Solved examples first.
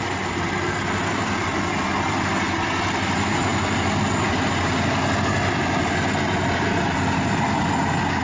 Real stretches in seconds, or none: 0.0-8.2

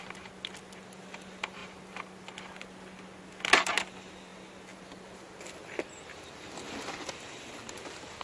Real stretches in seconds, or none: 0.0-8.2

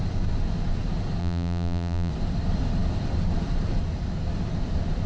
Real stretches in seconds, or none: 0.0-1.2; 2.1-5.1

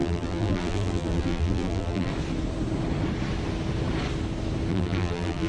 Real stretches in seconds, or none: 2.1-4.7

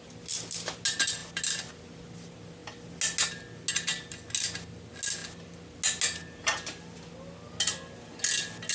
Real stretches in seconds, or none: 0.0-8.7

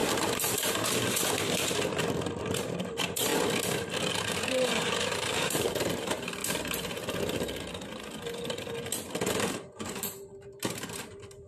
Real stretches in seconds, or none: 3.3-4.1; 6.4-9.4

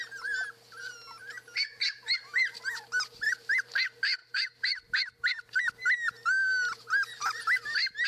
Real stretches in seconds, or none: 0.0-4.2; 5.6-7.2